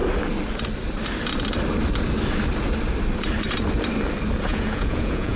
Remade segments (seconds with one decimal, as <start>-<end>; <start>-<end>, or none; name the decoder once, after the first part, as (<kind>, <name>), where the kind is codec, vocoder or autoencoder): 4.5-5.4 (vocoder, Vocos)